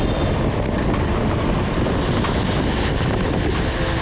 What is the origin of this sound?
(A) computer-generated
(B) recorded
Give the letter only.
B